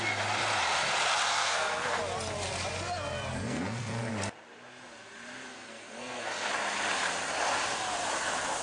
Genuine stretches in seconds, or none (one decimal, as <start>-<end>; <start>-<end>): 0.0-1.3; 2.0-3.3; 4.1-5.5; 6.5-8.6